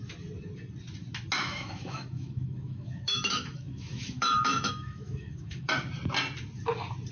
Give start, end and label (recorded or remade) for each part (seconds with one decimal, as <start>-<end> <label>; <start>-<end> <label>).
0.0-1.4 recorded; 1.4-5.7 remade; 5.7-7.1 recorded